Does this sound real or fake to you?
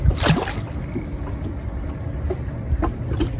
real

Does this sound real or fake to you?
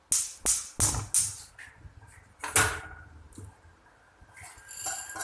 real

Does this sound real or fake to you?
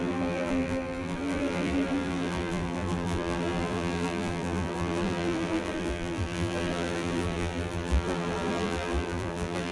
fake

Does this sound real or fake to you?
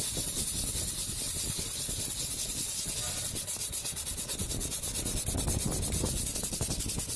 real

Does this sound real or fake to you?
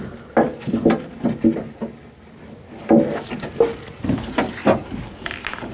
real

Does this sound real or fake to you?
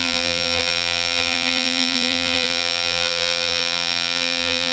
fake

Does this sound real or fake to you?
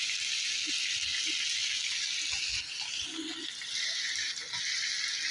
real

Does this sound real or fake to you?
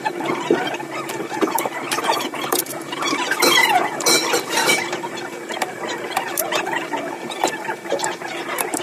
fake